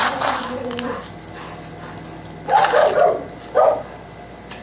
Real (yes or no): yes